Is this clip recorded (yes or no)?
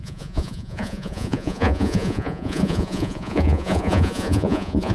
no